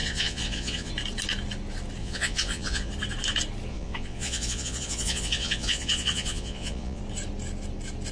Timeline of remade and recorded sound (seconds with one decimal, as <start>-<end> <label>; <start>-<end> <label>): 0.0-0.9 remade; 0.9-2.0 recorded; 2.0-2.9 remade; 2.9-3.7 recorded; 3.7-7.0 remade; 7.0-8.1 recorded